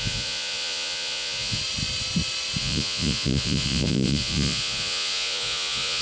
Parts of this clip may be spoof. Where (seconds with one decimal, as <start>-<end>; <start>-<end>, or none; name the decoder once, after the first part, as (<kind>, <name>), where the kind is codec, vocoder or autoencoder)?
0.0-1.6 (vocoder, Vocos); 2.6-6.0